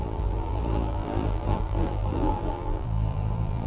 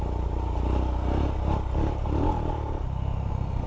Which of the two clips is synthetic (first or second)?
first